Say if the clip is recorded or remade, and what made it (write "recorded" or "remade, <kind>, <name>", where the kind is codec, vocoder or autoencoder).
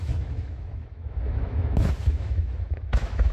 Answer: remade, autoencoder, DAC-VAE